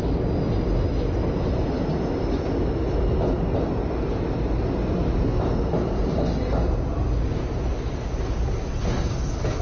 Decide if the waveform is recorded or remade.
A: recorded